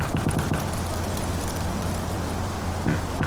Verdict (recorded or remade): remade